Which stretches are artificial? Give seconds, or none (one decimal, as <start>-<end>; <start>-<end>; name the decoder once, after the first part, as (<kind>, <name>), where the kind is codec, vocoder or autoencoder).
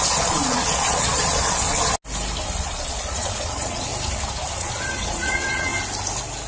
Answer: 0.0-1.7 (vocoder, Vocos); 2.6-3.9; 4.6-5.7